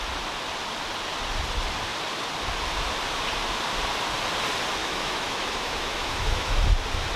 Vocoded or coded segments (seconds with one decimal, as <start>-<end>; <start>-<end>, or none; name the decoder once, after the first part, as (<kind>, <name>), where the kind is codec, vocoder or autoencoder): 4.8-6.5 (autoencoder, DAC-VAE)